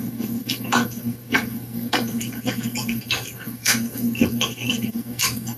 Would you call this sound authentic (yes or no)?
no